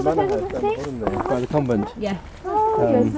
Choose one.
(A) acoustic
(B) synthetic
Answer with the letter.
A